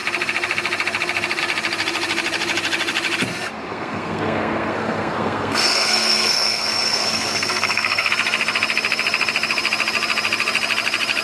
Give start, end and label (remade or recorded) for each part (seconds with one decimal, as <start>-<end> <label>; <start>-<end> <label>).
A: 0.0-3.7 recorded; 3.7-8.1 remade; 8.1-11.2 recorded